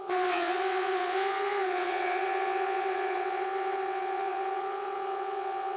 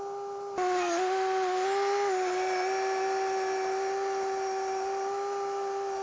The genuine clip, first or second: second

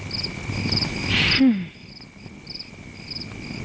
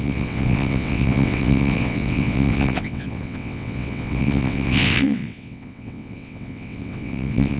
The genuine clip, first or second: first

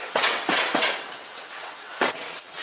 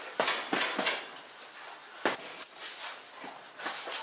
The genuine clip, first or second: second